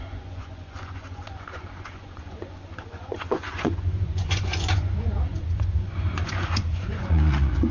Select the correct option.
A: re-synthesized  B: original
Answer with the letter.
A